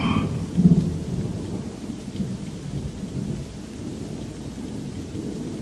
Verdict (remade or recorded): recorded